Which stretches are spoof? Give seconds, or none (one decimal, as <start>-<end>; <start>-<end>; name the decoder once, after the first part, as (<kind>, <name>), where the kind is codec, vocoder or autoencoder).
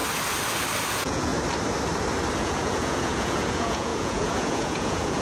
0.9-1.3 (vocoder, Vocos); 2.4-5.2